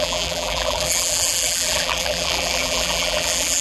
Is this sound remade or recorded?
remade